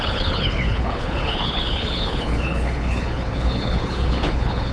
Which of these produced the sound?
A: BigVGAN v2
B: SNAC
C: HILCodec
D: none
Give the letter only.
C